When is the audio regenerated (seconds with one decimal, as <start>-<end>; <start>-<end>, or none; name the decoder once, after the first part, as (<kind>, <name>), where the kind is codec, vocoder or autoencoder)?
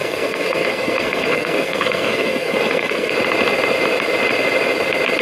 0.0-3.1 (codec, SNAC)